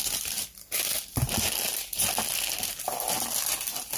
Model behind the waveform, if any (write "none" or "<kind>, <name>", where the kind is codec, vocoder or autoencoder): none